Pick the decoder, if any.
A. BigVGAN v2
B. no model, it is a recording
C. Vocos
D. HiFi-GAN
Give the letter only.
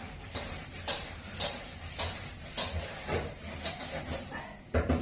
A